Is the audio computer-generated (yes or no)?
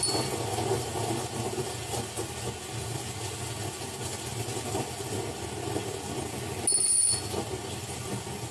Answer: no